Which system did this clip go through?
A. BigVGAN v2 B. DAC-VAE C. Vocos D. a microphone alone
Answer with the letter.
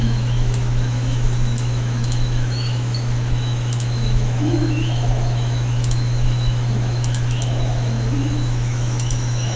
B